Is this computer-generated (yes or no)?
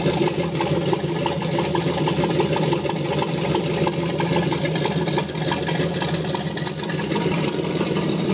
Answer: no